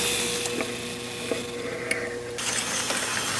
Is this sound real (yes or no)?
yes